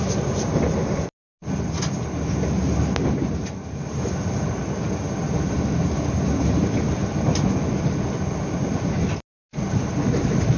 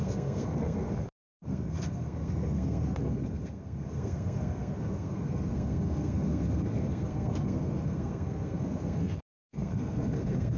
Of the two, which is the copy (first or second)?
second